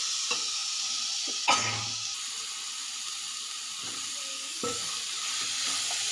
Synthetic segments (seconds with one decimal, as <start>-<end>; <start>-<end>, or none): 4.3-4.9